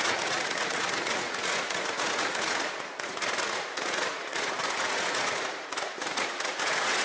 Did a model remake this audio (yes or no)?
yes